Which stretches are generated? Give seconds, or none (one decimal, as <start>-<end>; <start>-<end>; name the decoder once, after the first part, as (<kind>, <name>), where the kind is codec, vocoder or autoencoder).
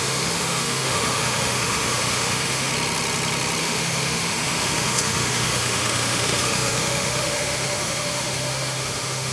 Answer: 0.0-2.7 (autoencoder, DAC-VAE); 3.6-9.3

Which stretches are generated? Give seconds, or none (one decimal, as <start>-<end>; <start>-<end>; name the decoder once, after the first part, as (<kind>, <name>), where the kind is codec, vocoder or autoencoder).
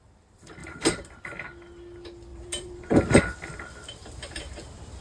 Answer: 0.6-1.2 (vocoder, BigVGAN v2); 2.3-3.2; 4.0-4.6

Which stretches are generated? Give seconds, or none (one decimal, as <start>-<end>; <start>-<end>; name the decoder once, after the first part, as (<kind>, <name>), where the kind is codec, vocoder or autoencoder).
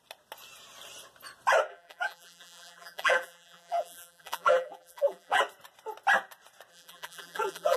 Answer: 1.7-5.4 (vocoder, BigVGAN v2); 6.7-7.8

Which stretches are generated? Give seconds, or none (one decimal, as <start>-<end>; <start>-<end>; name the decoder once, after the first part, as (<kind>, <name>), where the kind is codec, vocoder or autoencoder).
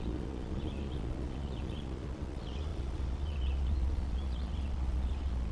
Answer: 0.0-5.5 (vocoder, Vocos)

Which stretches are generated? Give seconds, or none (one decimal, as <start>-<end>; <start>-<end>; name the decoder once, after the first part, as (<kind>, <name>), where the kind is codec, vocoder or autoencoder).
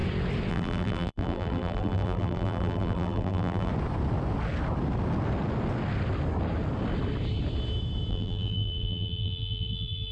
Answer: 0.5-3.7 (vocoder, BigVGAN v2); 8.1-10.1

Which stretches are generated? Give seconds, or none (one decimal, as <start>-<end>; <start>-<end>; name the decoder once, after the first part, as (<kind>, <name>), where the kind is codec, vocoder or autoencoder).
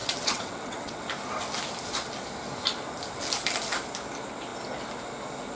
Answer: 0.0-1.0 (vocoder, WaveNeXt)